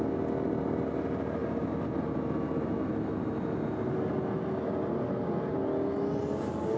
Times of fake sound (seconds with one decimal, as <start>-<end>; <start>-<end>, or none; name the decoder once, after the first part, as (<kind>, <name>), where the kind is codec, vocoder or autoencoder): none